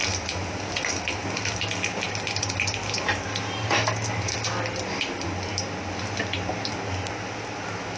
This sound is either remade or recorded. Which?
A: recorded